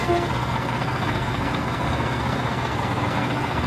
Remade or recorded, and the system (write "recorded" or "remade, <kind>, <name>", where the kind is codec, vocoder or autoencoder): remade, codec, SNAC